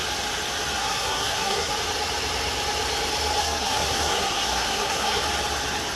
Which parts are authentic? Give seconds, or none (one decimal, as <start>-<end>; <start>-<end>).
0.0-0.8; 1.7-3.4; 5.2-6.0